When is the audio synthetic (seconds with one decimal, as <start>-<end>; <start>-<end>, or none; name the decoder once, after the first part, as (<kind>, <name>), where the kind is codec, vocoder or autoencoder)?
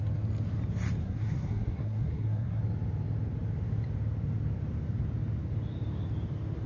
1.0-2.6 (codec, SNAC)